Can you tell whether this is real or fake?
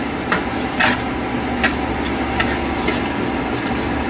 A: real